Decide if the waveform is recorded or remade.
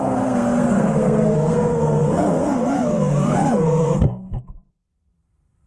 remade